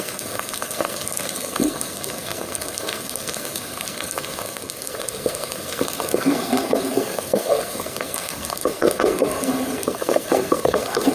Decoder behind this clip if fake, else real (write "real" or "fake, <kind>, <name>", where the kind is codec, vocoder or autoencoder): fake, codec, SNAC